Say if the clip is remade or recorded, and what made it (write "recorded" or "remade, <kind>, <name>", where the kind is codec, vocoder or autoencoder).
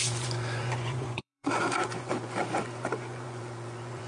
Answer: remade, vocoder, Vocos